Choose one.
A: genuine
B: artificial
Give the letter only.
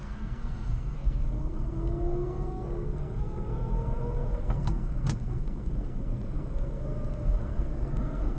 B